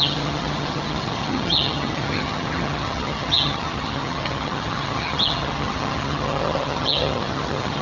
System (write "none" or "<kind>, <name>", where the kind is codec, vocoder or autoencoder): vocoder, HiFi-GAN